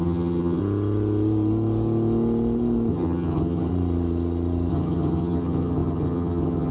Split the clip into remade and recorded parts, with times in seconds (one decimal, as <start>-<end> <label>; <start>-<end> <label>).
0.0-0.6 remade; 0.6-2.9 recorded; 2.9-3.7 remade; 3.7-4.7 recorded; 4.7-6.7 remade